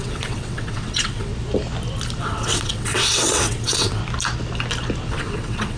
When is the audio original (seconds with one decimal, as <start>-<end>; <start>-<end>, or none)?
1.3-2.2; 4.0-5.1